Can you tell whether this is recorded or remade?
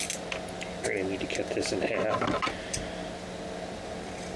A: recorded